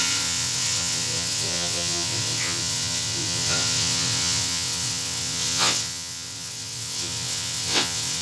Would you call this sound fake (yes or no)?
yes